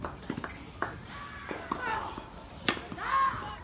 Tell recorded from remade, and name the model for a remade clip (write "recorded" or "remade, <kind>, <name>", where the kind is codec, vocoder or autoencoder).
recorded